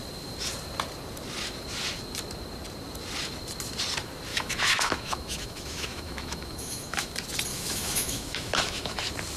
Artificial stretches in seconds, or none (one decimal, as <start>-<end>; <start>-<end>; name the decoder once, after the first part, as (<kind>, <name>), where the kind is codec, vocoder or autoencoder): 4.3-7.1 (autoencoder, DAC-VAE); 7.5-9.0